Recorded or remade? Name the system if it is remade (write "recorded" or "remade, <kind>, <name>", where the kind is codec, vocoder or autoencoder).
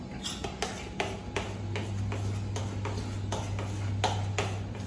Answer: recorded